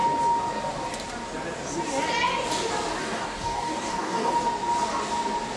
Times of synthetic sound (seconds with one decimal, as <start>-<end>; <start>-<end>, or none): 3.0-4.3